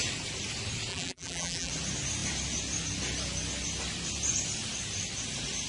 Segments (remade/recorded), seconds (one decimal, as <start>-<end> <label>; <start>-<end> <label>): 0.0-0.9 recorded; 0.9-1.7 remade; 1.7-5.7 recorded